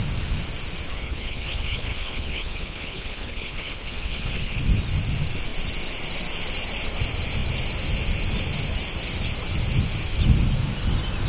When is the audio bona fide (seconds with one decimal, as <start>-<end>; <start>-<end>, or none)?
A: 0.0-0.9; 4.6-11.3